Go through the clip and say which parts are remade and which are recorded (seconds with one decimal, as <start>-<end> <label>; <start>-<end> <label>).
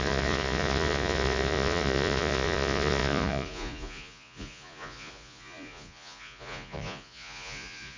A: 0.0-8.0 remade